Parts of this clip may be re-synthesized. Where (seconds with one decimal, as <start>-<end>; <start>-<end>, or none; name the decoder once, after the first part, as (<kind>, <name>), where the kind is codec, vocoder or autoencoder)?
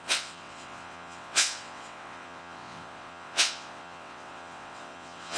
0.0-5.4 (vocoder, WaveNeXt)